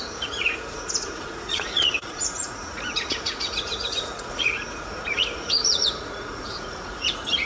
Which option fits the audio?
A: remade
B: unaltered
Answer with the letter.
A